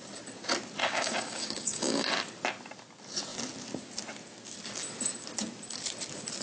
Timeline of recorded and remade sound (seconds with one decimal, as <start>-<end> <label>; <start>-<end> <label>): 0.0-0.8 recorded; 0.8-2.1 remade; 2.1-6.4 recorded